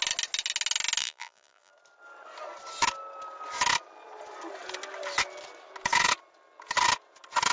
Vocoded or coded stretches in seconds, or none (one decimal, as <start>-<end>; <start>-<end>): 1.0-1.7